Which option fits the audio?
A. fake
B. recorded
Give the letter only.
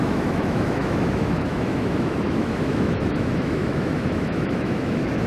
A